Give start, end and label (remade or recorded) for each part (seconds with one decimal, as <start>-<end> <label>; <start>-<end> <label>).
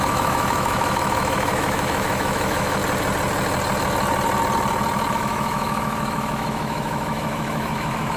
0.0-2.8 remade; 2.8-5.1 recorded; 5.1-8.2 remade